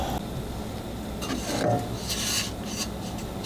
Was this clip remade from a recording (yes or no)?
no